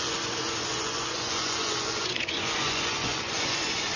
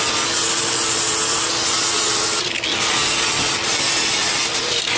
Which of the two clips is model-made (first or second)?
first